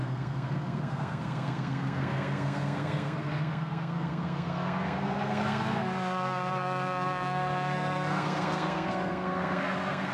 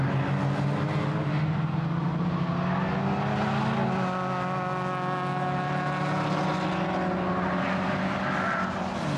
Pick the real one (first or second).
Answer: second